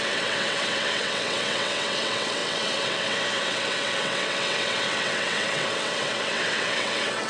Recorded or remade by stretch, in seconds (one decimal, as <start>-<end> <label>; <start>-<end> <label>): 0.0-7.3 remade